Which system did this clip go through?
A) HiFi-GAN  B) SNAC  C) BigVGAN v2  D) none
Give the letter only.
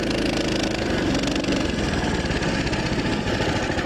D